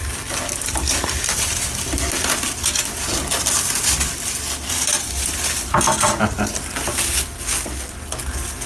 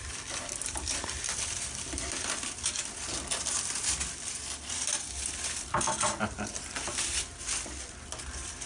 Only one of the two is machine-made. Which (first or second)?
second